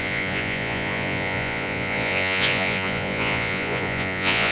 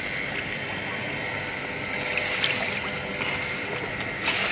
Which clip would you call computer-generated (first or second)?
first